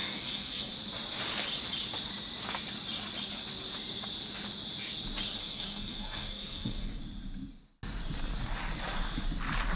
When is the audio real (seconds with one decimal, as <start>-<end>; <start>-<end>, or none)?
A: 0.7-5.4; 7.0-9.8